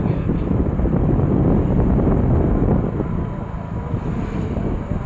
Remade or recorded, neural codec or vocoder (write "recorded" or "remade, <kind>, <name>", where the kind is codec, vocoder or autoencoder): recorded